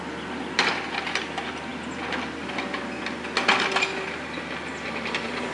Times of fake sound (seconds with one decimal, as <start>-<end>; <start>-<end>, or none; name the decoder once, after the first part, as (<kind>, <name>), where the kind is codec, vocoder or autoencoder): none

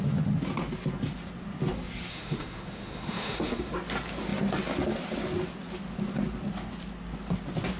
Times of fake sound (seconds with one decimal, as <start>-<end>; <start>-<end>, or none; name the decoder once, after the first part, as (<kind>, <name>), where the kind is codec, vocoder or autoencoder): 2.1-3.7 (autoencoder, DAC-VAE)